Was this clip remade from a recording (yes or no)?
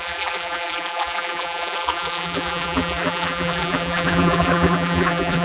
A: yes